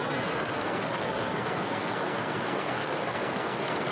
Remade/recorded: remade